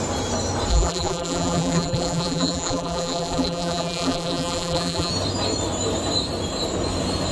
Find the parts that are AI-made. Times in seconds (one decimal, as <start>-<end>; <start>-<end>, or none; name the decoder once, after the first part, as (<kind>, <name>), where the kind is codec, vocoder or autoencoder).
0.7-5.1 (vocoder, BigVGAN v2)